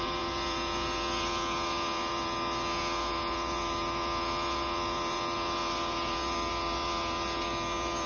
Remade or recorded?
remade